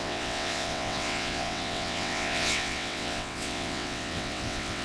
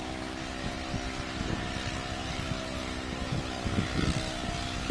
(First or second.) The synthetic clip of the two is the first